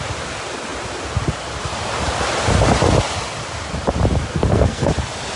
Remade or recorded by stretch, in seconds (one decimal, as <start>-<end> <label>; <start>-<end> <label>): 0.0-4.3 recorded; 4.3-4.9 remade; 4.9-5.4 recorded